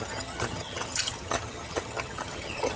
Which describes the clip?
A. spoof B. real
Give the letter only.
A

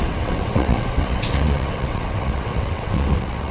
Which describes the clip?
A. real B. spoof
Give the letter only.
B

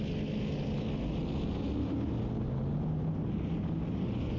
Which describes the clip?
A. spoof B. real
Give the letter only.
B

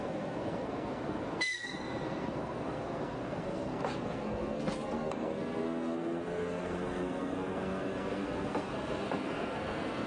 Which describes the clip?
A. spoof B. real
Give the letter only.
A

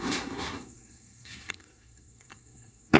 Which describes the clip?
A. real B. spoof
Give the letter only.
B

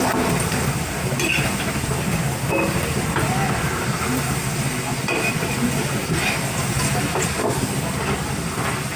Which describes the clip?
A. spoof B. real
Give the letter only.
B